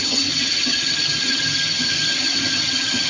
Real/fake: fake